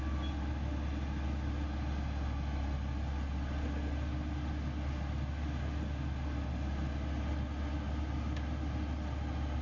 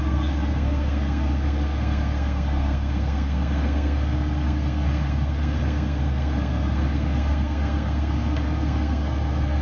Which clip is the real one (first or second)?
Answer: first